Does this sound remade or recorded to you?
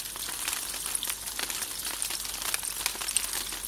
recorded